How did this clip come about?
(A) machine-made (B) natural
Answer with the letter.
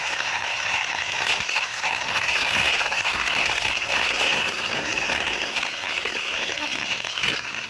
A